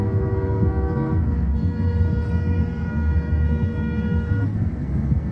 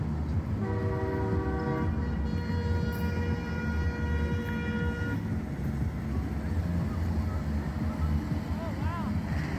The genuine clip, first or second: second